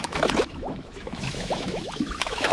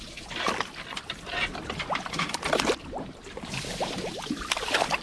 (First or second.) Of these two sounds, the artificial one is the first